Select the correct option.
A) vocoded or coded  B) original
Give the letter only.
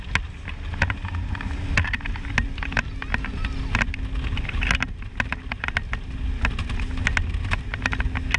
B